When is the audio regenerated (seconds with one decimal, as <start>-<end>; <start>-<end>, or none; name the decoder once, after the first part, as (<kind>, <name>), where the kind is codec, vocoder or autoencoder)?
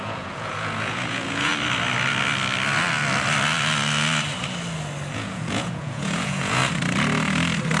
0.0-1.5 (vocoder, Vocos); 5.1-6.6